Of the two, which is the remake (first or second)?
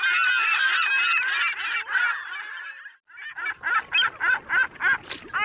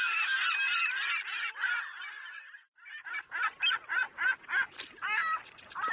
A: second